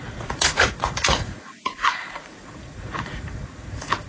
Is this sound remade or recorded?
remade